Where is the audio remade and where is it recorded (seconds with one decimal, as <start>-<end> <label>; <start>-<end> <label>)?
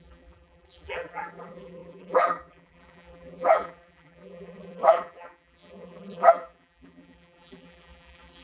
0.0-8.4 remade